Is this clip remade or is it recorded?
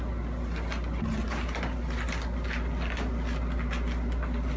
recorded